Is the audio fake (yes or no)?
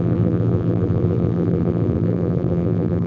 yes